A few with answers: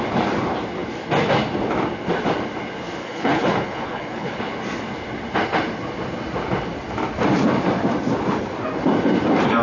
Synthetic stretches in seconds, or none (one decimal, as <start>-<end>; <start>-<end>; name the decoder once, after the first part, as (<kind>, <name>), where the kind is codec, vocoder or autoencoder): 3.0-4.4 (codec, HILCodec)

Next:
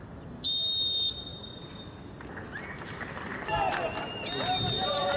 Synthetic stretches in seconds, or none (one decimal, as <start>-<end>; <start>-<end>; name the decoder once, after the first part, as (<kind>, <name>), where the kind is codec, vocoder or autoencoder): 1.3-3.7 (vocoder, BigVGAN v2)

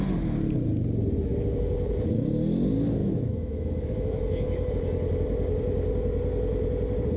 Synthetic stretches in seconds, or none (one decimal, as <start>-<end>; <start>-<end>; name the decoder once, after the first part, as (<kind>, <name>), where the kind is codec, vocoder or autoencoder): 3.0-4.7 (autoencoder, DAC-VAE)

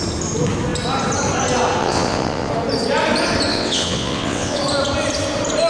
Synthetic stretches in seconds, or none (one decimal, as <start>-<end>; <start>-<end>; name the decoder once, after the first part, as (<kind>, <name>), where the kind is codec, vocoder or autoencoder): 1.8-2.5 (vocoder, WaveNeXt); 3.5-4.6